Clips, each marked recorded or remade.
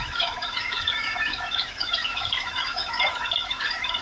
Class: remade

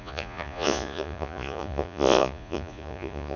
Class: remade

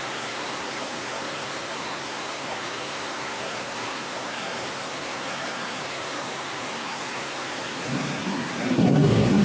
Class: remade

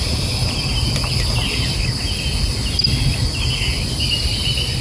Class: recorded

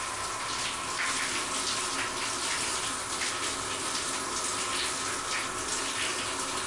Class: recorded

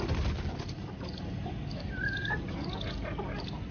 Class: recorded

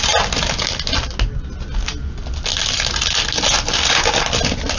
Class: recorded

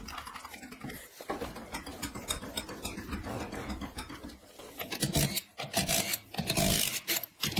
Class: recorded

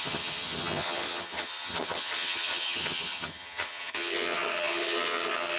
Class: remade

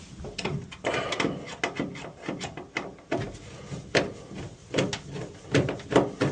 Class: recorded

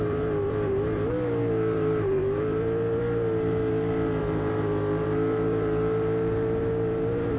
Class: remade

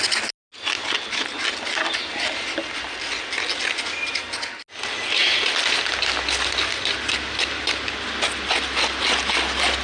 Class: recorded